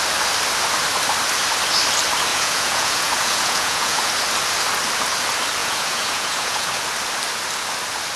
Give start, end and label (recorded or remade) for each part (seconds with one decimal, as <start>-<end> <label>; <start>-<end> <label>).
0.0-2.3 recorded; 2.3-4.1 remade; 4.1-5.6 recorded; 5.6-6.8 remade; 6.8-8.2 recorded